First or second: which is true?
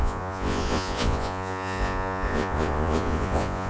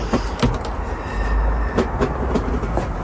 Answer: second